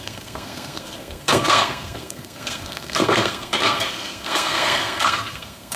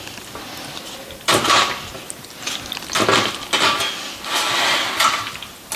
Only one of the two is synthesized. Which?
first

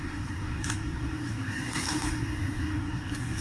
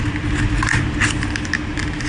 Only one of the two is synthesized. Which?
first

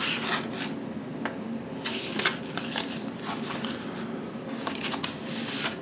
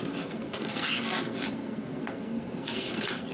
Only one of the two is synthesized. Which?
second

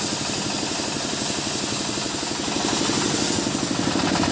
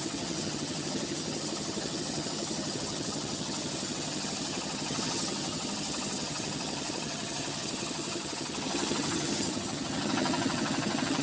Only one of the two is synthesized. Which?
second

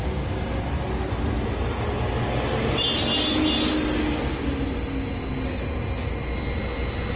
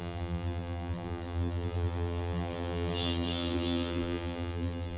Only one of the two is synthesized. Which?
second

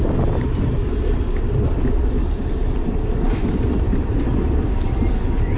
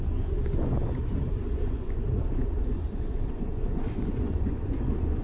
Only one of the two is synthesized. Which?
second